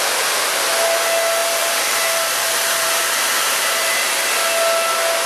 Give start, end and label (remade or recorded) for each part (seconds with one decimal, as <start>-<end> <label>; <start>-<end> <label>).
0.0-1.4 recorded; 1.4-4.1 remade; 4.1-5.3 recorded